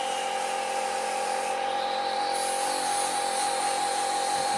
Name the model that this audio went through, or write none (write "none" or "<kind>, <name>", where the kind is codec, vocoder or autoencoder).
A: none